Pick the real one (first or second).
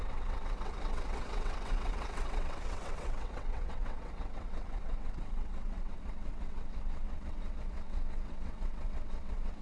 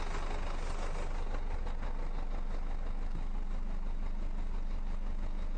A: second